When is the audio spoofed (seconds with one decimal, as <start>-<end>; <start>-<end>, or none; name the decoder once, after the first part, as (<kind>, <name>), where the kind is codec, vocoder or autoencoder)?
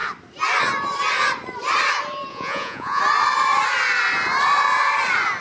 2.3-3.0 (vocoder, Vocos)